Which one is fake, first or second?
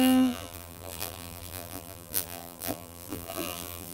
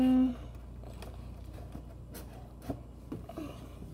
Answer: first